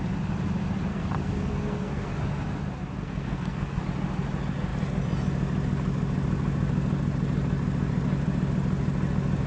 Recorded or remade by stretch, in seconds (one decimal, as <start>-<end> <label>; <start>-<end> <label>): 0.0-0.9 recorded; 0.9-2.1 remade; 2.1-3.0 recorded; 3.0-3.8 remade; 3.8-9.5 recorded